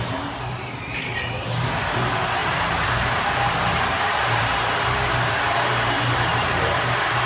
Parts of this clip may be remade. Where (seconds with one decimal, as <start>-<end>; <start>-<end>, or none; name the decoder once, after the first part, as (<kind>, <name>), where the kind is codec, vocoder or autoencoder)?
2.4-6.8 (vocoder, BigVGAN v2)